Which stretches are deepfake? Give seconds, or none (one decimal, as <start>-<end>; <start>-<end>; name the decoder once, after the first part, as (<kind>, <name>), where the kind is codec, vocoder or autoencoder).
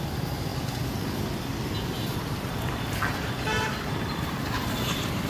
0.0-0.5 (vocoder, BigVGAN v2); 3.7-5.3